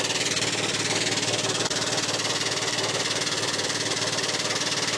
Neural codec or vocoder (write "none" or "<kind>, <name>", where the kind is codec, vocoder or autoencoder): none